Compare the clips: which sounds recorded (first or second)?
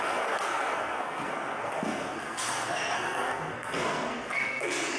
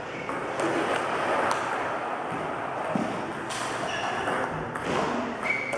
second